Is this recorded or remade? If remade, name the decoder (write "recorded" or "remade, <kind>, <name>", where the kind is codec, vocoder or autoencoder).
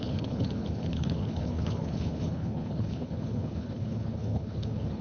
remade, codec, HILCodec